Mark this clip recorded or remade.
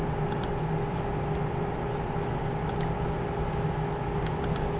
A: recorded